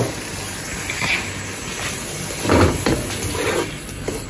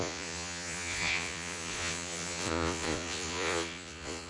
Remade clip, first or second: second